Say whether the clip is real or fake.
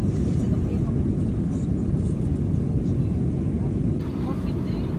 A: real